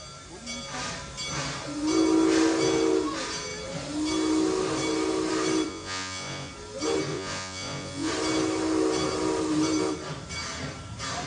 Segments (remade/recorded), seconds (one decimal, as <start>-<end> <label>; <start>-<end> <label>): 0.0-5.7 recorded; 5.7-6.5 remade; 6.5-7.1 recorded; 7.1-8.1 remade; 8.1-11.3 recorded